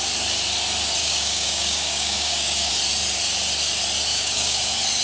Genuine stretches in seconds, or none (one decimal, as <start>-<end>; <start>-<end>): 0.0-1.0; 2.7-4.1; 4.6-5.0